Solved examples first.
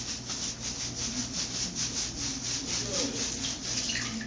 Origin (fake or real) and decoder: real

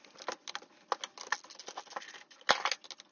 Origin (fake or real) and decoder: real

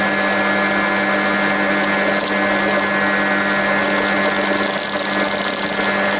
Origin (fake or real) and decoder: real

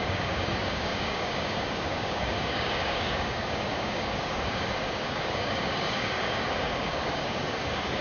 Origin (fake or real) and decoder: fake, codec, DAC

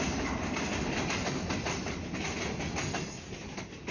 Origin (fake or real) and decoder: real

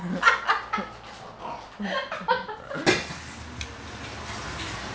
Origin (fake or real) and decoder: real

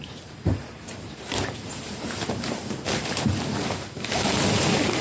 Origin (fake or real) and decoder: fake, vocoder, BigVGAN v2